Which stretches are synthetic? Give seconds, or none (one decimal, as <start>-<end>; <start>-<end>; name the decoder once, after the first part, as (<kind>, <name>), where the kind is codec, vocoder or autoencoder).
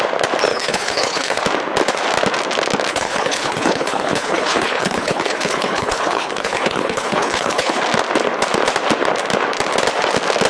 0.5-1.4 (codec, HILCodec); 2.9-7.8